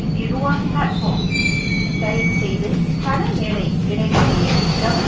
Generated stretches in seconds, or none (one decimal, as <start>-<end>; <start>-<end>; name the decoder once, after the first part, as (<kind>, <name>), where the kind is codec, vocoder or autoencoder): 0.6-1.3 (autoencoder, DAC-VAE); 3.8-5.1